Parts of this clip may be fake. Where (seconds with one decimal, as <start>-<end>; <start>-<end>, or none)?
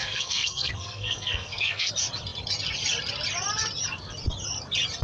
0.0-1.9